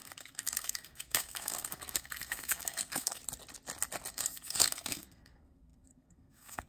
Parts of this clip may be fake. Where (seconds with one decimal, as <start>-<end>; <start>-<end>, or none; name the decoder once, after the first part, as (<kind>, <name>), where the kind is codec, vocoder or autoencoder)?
0.0-3.2 (codec, SNAC); 4.1-6.7